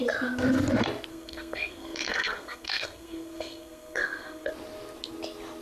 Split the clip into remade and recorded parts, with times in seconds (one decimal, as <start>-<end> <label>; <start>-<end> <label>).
0.0-1.1 recorded; 1.1-4.5 remade; 4.5-5.6 recorded